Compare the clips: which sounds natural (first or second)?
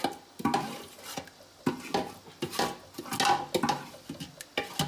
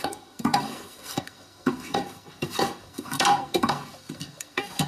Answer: first